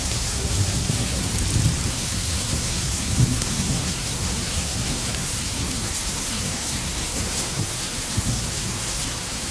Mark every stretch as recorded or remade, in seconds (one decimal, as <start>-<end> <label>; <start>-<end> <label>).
0.0-1.3 remade; 1.3-1.9 recorded; 1.9-9.5 remade